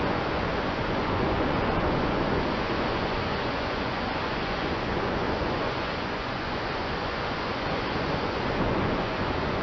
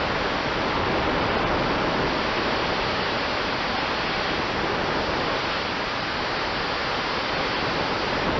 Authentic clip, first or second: second